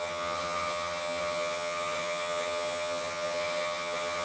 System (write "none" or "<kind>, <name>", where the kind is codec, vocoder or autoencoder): vocoder, HiFi-GAN